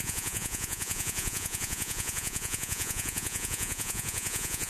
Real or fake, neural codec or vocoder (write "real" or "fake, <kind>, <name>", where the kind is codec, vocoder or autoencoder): fake, vocoder, Vocos